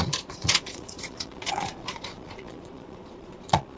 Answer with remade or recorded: remade